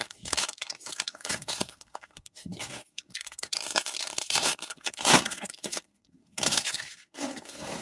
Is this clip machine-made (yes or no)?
yes